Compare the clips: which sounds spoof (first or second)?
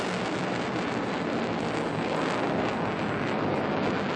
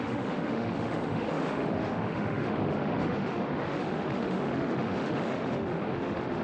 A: second